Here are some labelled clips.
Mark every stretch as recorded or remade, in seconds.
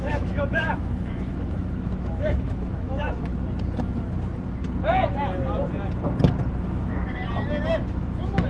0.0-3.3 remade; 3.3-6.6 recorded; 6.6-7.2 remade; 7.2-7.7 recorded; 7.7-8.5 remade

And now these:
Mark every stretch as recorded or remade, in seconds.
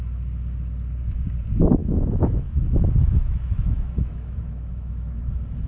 0.0-1.8 recorded; 1.8-5.2 remade; 5.2-5.7 recorded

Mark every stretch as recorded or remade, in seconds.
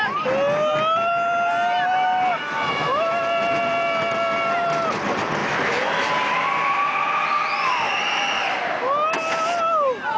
0.0-2.3 recorded; 2.3-3.2 remade; 3.2-5.4 recorded; 5.4-6.1 remade; 6.1-10.2 recorded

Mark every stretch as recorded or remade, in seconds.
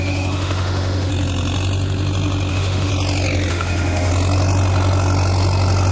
0.0-1.1 remade; 1.1-2.5 recorded; 2.5-2.9 remade; 2.9-3.5 recorded; 3.5-4.1 remade; 4.1-5.9 recorded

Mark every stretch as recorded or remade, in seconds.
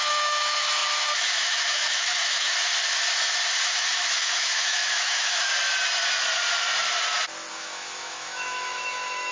0.0-2.5 remade; 2.5-3.6 recorded; 3.6-5.5 remade; 5.5-7.5 recorded; 7.5-9.3 remade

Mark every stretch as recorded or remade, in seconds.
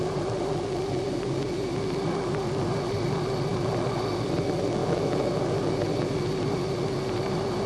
0.0-4.8 recorded; 4.8-5.4 remade; 5.4-7.7 recorded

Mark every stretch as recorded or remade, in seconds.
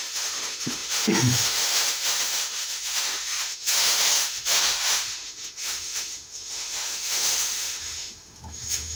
0.0-9.0 remade